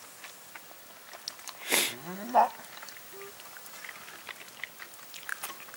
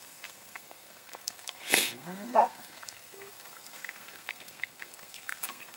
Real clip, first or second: first